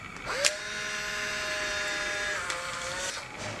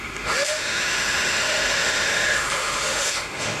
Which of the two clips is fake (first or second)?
second